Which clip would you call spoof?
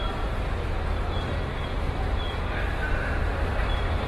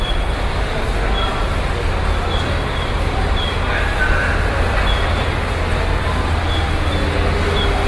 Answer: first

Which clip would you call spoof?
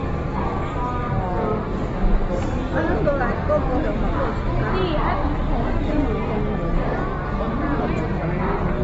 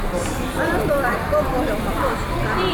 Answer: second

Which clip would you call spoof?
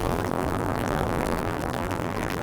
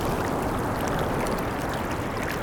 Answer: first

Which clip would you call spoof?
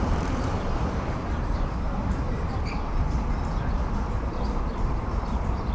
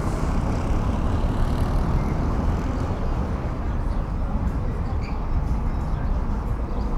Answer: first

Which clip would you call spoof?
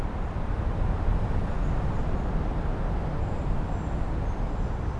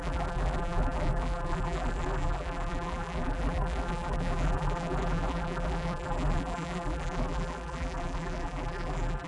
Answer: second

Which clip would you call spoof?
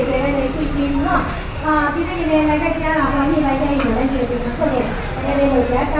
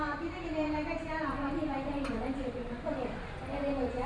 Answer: second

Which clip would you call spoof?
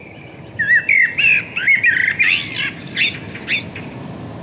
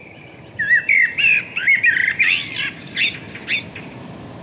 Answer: second